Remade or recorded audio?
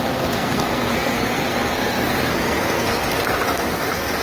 remade